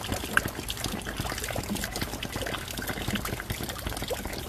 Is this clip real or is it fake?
real